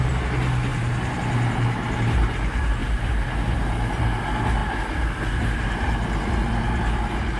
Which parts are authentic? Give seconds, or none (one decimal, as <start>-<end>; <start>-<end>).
0.0-0.7; 1.2-2.8; 3.3-7.4

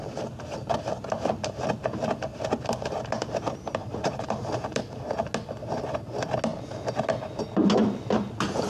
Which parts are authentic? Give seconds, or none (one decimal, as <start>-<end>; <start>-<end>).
0.0-3.8; 4.9-8.7

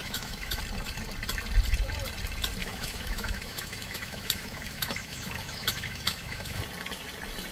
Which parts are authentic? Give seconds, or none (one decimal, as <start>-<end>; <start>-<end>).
0.6-2.6; 6.6-7.5

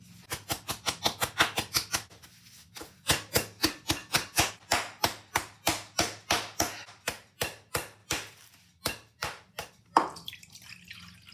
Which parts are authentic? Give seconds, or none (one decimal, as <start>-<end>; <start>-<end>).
0.0-4.0; 4.5-8.0; 10.7-11.3

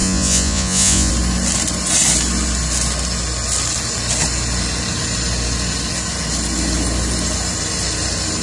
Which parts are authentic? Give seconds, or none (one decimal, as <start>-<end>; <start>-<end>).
1.1-8.4

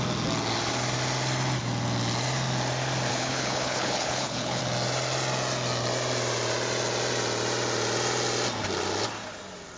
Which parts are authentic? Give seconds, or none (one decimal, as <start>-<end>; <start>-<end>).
0.0-3.1; 4.6-9.8

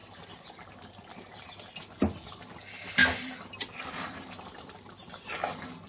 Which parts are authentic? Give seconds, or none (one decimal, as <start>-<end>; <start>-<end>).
2.0-3.0; 5.3-5.9

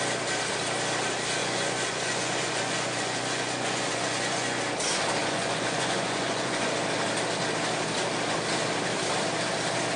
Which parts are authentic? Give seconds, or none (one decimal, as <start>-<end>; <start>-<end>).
0.0-1.4; 4.6-5.2; 6.7-10.0